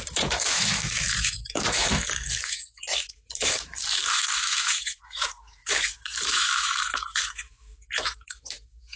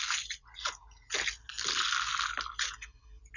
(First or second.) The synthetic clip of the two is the first